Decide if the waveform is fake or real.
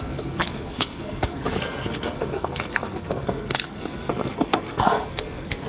fake